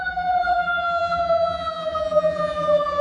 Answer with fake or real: fake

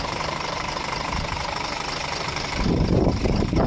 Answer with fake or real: fake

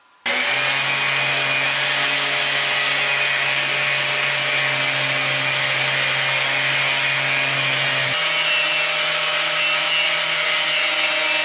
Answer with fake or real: real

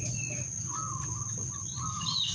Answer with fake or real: real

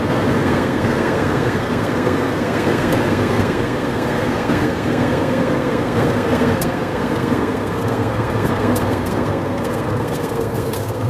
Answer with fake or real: fake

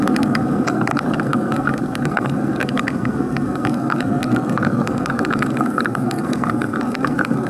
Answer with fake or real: fake